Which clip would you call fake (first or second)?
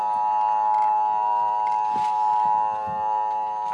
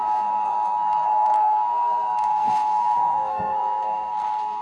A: second